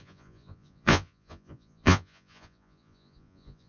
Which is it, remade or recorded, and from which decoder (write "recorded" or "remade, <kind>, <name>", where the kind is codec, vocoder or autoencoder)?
remade, vocoder, Vocos